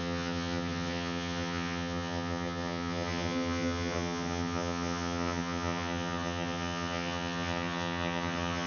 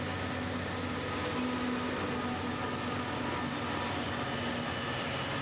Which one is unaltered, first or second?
second